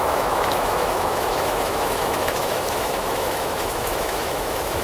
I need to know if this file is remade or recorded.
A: remade